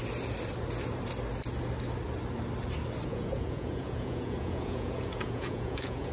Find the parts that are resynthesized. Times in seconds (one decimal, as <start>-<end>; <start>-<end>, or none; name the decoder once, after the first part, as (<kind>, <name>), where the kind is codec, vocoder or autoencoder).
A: 3.1-6.1 (vocoder, Vocos)